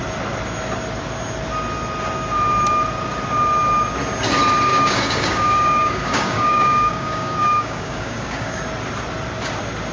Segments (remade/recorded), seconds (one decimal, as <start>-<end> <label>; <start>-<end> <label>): 0.0-4.7 recorded; 4.7-8.6 remade; 8.6-9.9 recorded